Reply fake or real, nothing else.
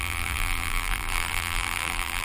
fake